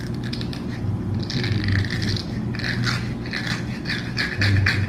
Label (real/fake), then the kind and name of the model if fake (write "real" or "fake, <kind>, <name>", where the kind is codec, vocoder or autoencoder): real